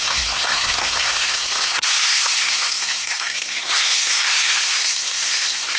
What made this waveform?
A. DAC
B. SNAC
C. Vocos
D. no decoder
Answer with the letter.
B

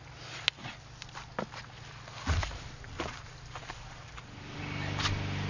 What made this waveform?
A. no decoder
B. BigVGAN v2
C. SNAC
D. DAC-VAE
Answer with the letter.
A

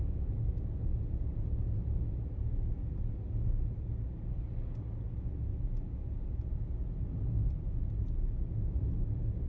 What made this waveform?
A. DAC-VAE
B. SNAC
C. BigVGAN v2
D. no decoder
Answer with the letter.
D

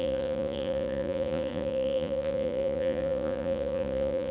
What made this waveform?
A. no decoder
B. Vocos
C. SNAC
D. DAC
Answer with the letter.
B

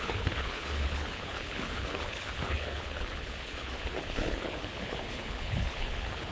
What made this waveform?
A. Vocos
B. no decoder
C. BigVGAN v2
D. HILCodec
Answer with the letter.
D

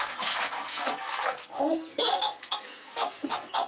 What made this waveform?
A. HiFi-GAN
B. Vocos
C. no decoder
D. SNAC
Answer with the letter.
D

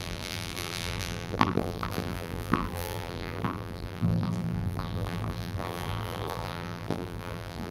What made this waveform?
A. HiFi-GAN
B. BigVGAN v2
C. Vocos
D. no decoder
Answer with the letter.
B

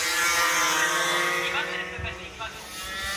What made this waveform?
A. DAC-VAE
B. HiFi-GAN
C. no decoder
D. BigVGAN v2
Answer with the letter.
C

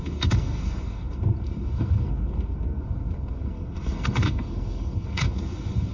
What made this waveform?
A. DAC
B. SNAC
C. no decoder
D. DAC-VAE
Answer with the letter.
B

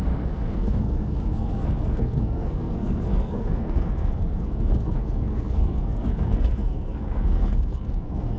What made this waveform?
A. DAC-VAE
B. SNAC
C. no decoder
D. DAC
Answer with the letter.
B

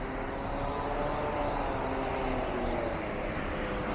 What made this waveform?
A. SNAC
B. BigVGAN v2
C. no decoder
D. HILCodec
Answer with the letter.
C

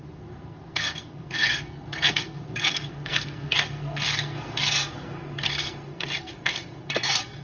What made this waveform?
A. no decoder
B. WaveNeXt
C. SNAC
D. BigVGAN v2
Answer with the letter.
C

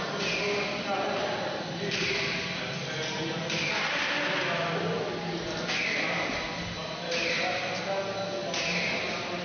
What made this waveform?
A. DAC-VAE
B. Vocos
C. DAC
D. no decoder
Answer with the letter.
D